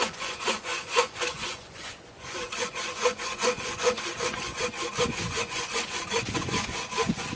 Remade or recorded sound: remade